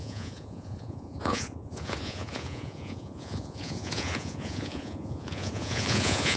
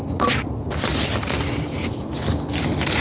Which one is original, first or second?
second